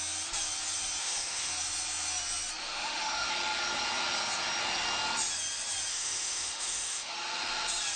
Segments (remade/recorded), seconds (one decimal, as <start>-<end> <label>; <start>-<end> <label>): 0.0-1.0 recorded; 1.0-1.5 remade; 1.5-2.6 recorded; 2.6-3.3 remade; 3.3-5.9 recorded; 5.9-7.1 remade; 7.1-8.0 recorded